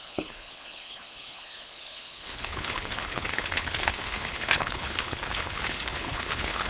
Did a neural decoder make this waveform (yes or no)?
yes